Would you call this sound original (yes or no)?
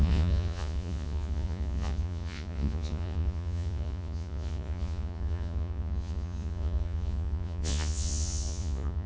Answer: no